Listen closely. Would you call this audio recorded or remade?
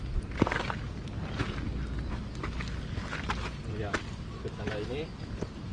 recorded